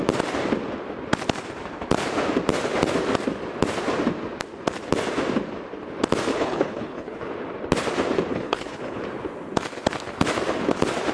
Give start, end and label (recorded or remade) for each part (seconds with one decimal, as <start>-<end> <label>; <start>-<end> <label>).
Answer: 0.0-6.3 recorded; 6.3-7.3 remade; 7.3-8.3 recorded; 8.3-9.0 remade; 9.0-11.1 recorded